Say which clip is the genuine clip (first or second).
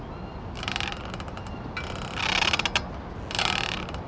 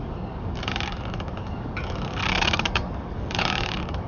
first